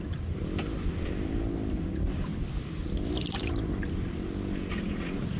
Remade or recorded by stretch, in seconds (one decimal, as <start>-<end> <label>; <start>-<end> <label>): 0.0-5.4 recorded